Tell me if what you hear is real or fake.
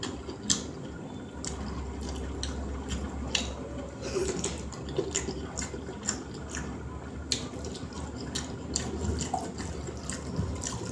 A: real